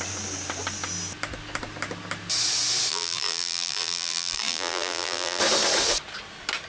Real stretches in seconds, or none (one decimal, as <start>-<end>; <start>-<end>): 0.0-2.9; 5.4-6.7